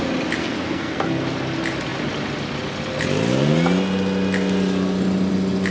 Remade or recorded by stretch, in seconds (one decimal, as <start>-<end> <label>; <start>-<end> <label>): 0.0-0.4 recorded; 0.4-1.2 remade; 1.2-5.7 recorded